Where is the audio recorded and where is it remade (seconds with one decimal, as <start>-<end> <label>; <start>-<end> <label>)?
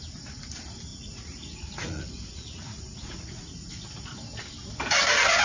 0.0-0.9 recorded; 0.9-3.7 remade; 3.7-5.4 recorded